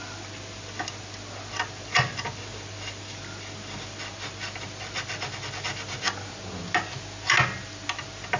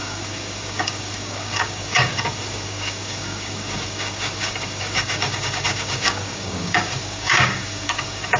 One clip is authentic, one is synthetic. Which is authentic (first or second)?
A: first